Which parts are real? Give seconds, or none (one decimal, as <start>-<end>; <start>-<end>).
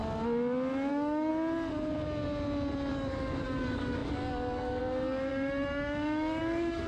0.0-0.9; 1.3-2.9